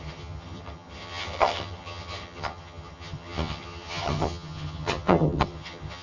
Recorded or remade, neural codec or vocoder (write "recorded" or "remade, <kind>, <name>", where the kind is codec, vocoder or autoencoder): remade, vocoder, HiFi-GAN